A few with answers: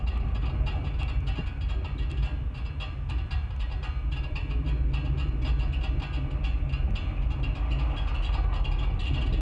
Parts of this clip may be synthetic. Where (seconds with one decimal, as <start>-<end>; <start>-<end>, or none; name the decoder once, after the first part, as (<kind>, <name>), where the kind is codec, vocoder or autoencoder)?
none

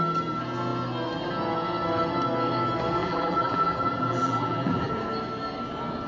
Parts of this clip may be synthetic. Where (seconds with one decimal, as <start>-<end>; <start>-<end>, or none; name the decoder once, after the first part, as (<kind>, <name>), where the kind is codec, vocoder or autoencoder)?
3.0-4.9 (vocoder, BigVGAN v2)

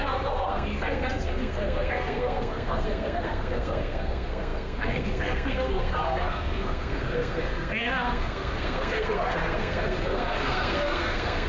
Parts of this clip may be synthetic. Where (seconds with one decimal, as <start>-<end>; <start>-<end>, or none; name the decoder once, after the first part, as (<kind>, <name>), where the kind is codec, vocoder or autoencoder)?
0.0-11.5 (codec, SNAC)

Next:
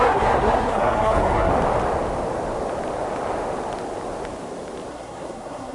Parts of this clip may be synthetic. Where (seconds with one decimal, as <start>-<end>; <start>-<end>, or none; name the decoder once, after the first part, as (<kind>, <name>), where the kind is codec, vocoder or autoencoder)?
0.0-1.5 (codec, SNAC); 4.9-5.7